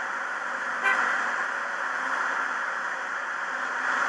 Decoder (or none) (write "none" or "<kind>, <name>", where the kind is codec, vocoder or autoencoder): none